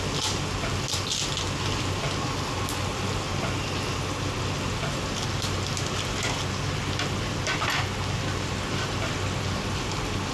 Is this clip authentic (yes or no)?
yes